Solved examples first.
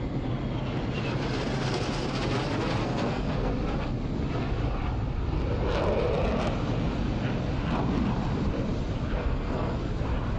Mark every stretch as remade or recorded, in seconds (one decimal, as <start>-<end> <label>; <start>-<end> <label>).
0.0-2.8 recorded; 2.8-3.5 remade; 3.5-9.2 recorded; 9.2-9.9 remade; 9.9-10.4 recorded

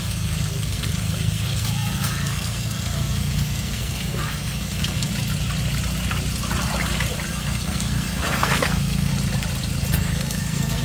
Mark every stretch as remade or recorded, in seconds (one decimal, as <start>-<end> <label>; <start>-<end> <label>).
0.0-5.1 remade; 5.1-7.3 recorded; 7.3-9.1 remade; 9.1-9.9 recorded; 9.9-10.8 remade

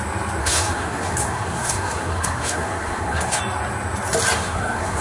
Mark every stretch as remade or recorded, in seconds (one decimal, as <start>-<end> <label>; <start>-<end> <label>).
0.0-0.4 recorded; 0.4-3.4 remade; 3.4-4.4 recorded; 4.4-5.0 remade

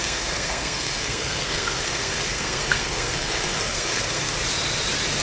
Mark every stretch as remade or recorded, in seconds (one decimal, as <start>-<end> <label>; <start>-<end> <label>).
0.0-4.4 remade; 4.4-5.2 recorded